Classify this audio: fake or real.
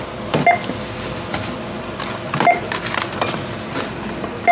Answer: real